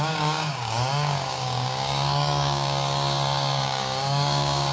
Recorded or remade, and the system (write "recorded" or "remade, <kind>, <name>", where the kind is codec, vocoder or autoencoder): remade, codec, DAC